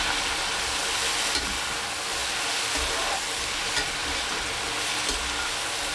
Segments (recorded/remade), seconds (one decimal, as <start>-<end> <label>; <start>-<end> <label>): 0.0-4.0 recorded; 4.0-4.6 remade; 4.6-5.9 recorded